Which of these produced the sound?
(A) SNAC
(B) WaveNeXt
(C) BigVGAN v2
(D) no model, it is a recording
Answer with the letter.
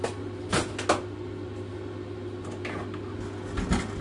D